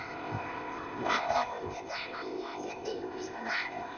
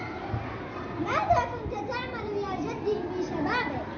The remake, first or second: first